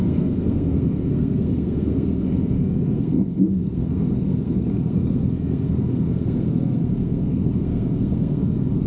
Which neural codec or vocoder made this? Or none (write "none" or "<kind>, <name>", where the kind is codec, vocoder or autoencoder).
codec, SNAC